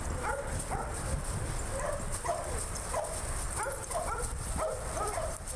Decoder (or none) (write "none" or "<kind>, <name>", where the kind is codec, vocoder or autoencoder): none